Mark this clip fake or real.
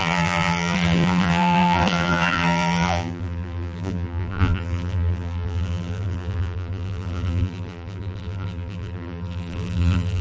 fake